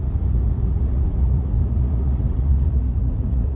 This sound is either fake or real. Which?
fake